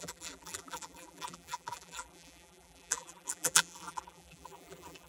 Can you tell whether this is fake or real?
fake